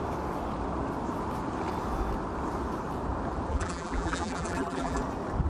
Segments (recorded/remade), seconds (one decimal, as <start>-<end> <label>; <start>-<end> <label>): 0.0-3.5 recorded; 3.5-5.0 remade; 5.0-5.5 recorded